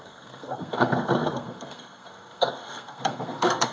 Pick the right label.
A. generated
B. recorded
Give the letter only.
A